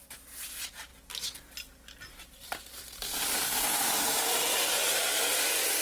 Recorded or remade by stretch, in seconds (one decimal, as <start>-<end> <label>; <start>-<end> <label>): 0.0-0.9 remade; 0.9-2.2 recorded; 2.2-5.8 remade